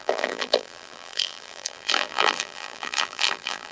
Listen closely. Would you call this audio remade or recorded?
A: remade